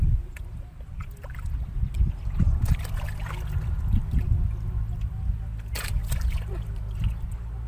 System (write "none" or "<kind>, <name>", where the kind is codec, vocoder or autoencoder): none